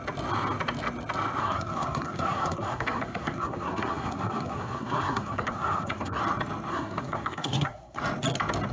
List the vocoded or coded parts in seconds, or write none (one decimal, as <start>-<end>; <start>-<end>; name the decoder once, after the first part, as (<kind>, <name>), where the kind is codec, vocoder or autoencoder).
1.4-6.2 (codec, SNAC); 6.7-8.0

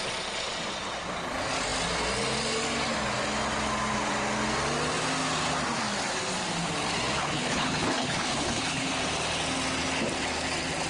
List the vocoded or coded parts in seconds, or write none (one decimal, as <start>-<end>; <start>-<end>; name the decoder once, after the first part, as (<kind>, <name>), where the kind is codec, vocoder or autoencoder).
7.2-8.9 (codec, HILCodec)

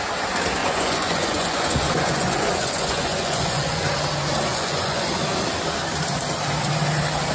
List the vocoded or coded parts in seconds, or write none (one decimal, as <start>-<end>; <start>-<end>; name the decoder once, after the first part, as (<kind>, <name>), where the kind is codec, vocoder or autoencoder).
0.6-3.9 (vocoder, Vocos); 4.5-5.1

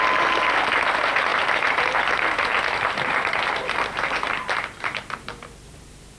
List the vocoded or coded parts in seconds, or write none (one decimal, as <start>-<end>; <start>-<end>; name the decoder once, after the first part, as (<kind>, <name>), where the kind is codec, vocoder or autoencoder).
2.5-6.2 (vocoder, BigVGAN v2)

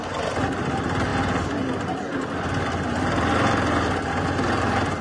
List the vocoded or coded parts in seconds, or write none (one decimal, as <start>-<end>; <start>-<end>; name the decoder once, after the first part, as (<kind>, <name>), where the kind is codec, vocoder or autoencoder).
none

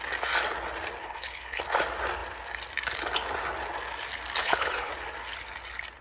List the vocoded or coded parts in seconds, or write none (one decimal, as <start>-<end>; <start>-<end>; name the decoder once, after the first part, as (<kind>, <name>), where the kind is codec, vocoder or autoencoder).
1.0-1.6 (codec, HILCodec); 4.4-4.9

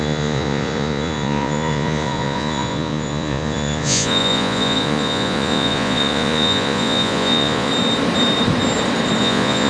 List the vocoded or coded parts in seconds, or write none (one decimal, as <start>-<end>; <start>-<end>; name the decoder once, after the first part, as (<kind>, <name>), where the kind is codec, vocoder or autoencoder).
0.0-7.7 (vocoder, Vocos); 9.2-9.7